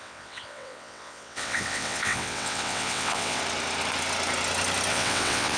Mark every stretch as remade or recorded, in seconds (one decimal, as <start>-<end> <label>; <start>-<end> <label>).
0.0-3.4 remade; 3.4-4.9 recorded; 4.9-5.6 remade